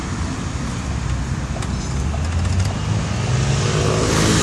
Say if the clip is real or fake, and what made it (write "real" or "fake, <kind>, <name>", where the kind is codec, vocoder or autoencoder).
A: real